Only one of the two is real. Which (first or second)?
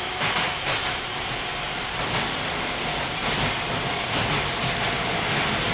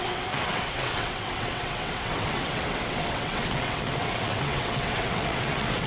first